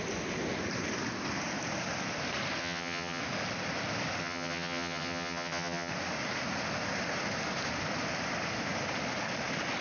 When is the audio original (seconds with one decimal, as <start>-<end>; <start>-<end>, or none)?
0.0-2.6; 3.2-4.2; 5.9-9.8